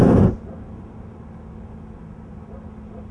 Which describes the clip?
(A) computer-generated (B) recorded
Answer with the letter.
B